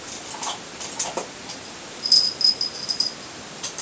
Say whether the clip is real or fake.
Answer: real